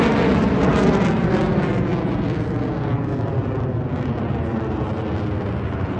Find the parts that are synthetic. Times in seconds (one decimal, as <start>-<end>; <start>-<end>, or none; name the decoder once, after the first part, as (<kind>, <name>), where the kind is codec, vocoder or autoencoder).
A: none